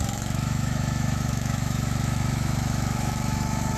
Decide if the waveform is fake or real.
fake